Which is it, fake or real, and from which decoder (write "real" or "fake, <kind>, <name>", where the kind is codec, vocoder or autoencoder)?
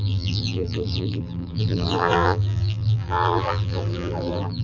fake, vocoder, BigVGAN v2